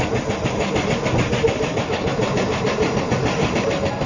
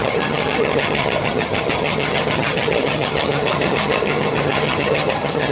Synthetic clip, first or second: second